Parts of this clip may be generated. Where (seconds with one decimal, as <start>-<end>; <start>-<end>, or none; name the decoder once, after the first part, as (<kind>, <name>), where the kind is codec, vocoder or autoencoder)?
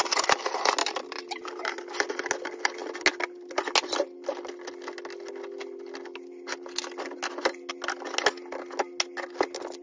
0.8-1.8 (vocoder, BigVGAN v2)